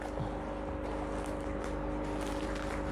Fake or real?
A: real